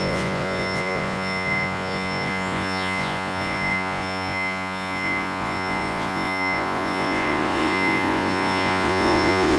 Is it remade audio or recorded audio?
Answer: remade